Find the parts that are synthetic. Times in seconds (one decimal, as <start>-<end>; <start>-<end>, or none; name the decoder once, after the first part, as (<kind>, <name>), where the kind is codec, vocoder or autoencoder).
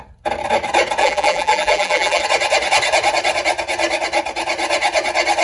1.0-2.2 (vocoder, BigVGAN v2)